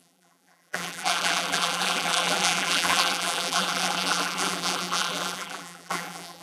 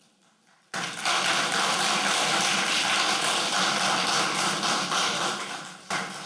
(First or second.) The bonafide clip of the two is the second